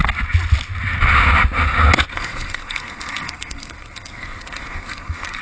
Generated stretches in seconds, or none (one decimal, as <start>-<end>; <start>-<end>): 2.1-5.4